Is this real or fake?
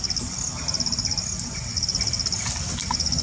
real